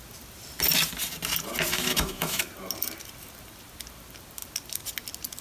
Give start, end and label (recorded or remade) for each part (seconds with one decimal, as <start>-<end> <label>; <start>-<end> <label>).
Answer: 0.0-1.7 recorded; 1.7-2.5 remade; 2.5-5.4 recorded